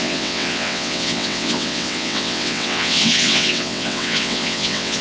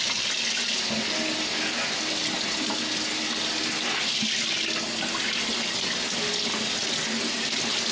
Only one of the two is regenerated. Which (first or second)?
first